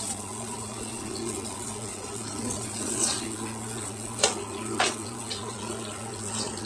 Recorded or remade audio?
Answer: remade